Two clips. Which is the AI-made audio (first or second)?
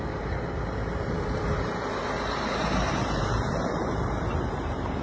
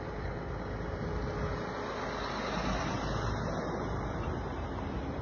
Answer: first